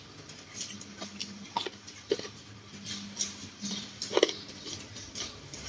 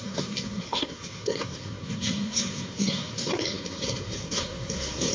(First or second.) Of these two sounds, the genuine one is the first